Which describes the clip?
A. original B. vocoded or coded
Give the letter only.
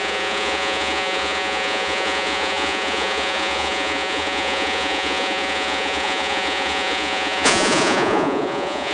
B